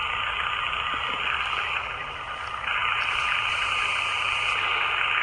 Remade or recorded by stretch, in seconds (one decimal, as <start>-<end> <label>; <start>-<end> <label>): 0.0-5.2 recorded